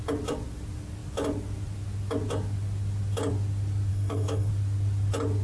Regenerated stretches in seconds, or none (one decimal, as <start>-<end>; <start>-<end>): 3.9-4.5

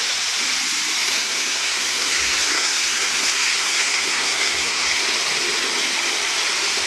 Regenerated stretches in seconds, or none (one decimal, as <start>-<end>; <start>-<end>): 1.0-5.0

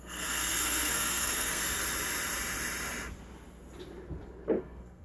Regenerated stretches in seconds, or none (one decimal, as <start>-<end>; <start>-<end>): 0.0-1.6; 4.6-5.0

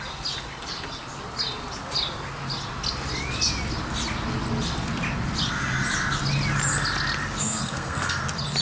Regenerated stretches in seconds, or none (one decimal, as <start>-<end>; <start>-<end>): 7.4-8.2